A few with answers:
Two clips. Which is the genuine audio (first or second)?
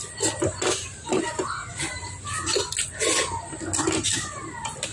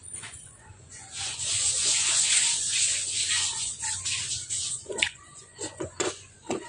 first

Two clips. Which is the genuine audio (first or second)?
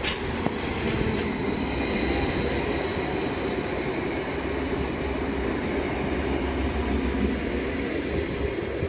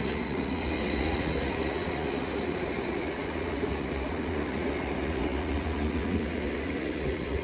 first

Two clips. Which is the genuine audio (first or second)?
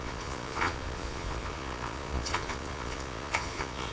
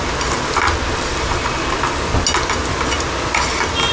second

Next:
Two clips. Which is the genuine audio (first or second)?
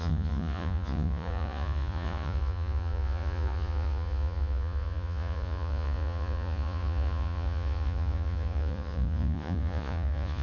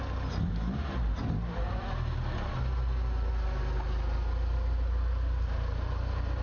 second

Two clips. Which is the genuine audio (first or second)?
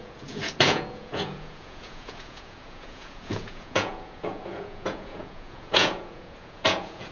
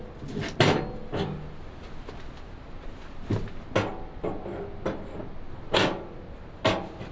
second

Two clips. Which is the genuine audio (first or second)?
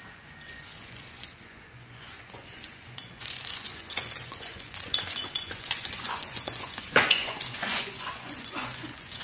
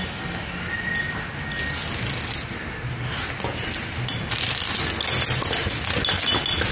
second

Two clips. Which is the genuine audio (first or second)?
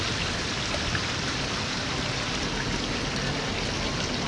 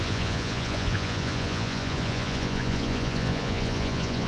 first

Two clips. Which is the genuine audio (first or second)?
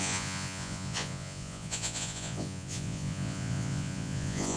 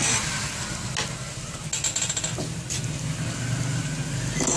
second